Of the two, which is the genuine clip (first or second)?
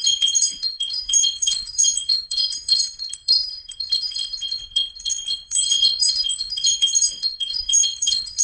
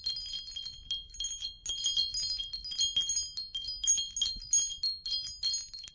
second